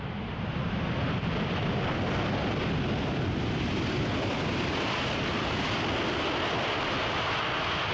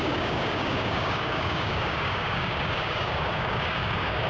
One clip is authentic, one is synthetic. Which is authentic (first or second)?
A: first